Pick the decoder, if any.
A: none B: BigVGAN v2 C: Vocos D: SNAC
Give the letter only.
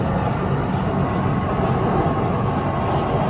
A